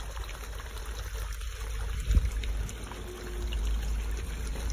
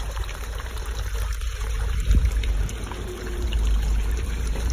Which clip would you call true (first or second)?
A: first